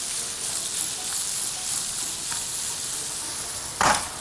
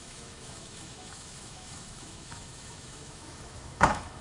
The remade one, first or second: second